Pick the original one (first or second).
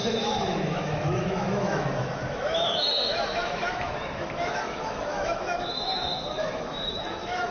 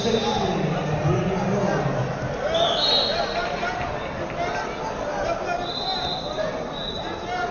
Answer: second